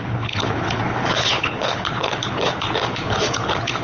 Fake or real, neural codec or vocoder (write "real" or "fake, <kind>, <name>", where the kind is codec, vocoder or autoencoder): fake, codec, HILCodec